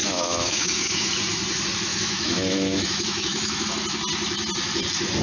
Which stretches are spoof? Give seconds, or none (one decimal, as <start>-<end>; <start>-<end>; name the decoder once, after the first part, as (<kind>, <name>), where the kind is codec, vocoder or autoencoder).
0.0-1.1 (autoencoder, DAC-VAE); 1.9-3.7